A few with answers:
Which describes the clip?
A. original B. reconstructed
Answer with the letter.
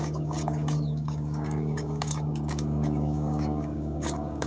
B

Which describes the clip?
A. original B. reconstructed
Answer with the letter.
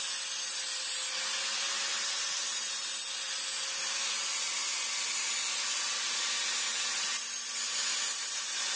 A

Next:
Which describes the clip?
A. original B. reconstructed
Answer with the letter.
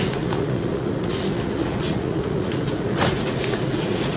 B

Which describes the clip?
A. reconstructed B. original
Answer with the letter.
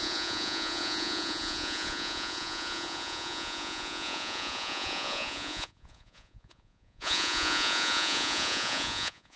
A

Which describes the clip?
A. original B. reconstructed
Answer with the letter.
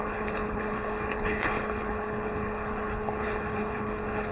B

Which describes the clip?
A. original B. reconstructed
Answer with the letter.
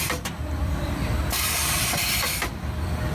B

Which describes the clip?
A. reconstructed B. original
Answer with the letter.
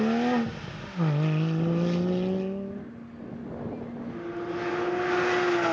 B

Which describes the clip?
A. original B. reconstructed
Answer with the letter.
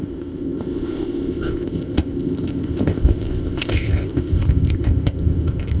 B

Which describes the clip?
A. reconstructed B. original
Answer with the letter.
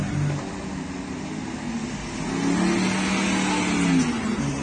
B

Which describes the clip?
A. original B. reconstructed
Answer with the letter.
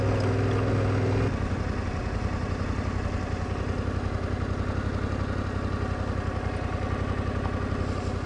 A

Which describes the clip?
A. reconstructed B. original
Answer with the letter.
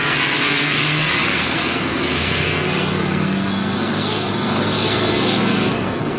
A